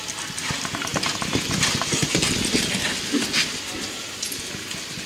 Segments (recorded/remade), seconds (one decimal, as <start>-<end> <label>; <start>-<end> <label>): 0.0-5.1 recorded